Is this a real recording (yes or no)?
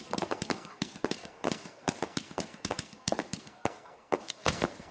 no